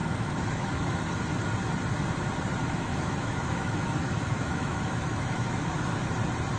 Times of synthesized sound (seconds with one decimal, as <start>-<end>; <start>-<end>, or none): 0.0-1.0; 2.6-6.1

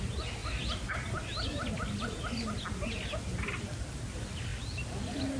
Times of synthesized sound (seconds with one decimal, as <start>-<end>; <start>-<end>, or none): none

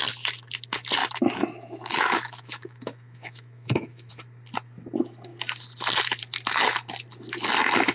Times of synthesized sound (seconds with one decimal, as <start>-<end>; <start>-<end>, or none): 1.0-4.1

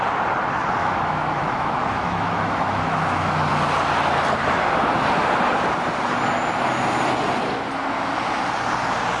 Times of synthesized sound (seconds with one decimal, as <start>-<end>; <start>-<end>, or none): 0.8-3.5

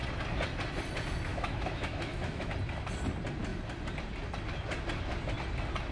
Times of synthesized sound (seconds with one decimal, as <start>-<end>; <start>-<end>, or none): 1.3-2.5